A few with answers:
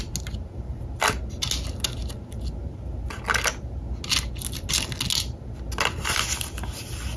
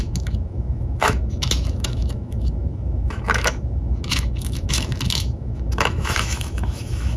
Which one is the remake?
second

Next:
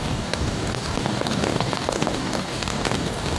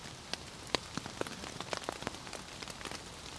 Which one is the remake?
first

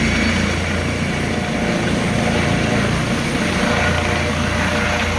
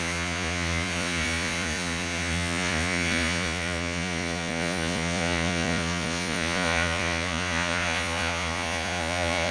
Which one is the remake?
second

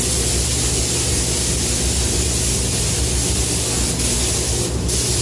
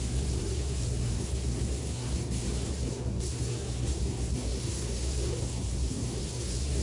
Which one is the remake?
second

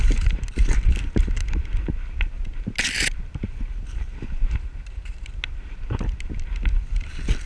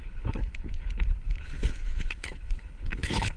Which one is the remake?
second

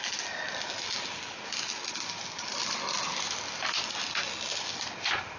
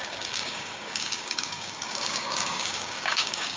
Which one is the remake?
second